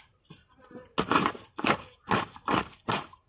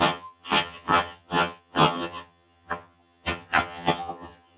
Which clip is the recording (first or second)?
first